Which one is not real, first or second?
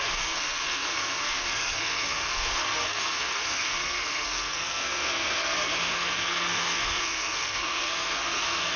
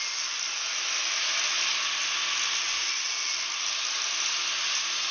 first